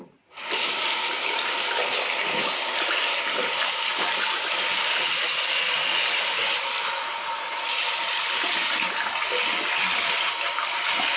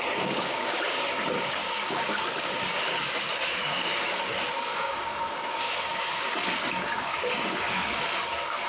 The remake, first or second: second